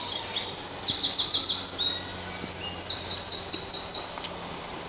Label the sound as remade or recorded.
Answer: recorded